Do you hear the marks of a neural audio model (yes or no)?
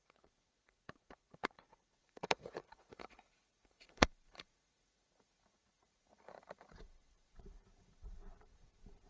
yes